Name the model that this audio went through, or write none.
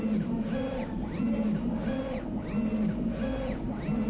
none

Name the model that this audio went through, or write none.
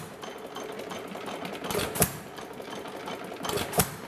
none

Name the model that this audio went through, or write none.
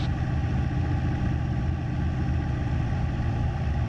none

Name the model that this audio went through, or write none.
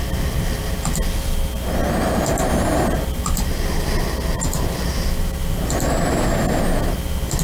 none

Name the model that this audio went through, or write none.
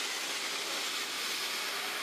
none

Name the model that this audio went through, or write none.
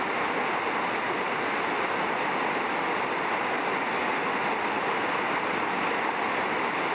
none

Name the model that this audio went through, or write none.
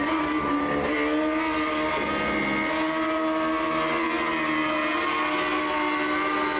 none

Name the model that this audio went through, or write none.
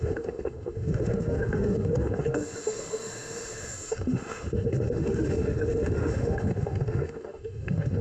autoencoder, DAC-VAE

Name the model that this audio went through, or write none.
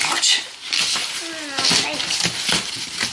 none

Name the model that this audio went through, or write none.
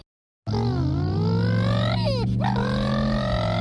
none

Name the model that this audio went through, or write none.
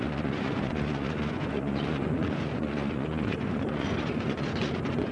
vocoder, Vocos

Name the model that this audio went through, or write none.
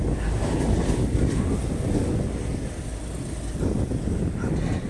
none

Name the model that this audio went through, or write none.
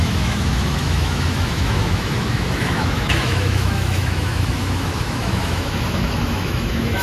autoencoder, DAC-VAE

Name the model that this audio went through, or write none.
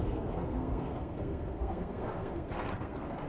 codec, SNAC